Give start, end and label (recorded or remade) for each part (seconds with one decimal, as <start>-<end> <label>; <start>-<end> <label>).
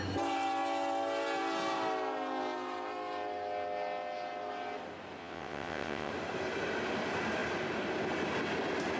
0.0-5.2 recorded; 5.2-6.1 remade; 6.1-9.0 recorded